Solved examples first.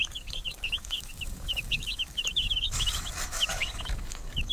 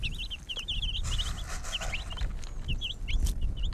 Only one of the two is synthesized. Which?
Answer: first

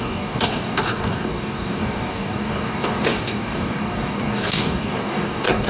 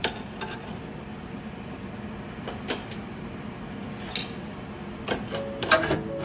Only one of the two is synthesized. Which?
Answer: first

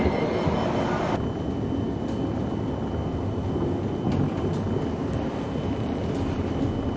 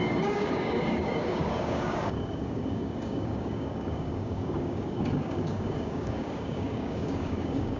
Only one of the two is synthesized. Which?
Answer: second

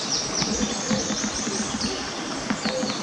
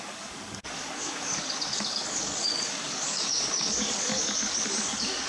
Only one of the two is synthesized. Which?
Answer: second